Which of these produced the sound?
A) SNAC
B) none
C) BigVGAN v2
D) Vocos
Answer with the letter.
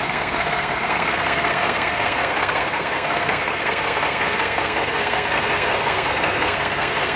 A